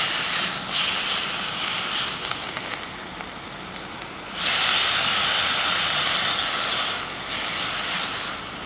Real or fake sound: real